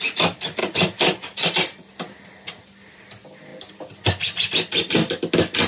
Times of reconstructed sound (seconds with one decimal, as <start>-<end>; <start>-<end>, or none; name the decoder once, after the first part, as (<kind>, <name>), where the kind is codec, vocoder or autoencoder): none